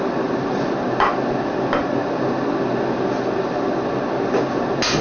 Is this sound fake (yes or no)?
no